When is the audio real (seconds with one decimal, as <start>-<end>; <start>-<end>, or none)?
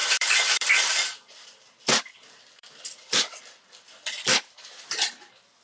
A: 3.4-5.6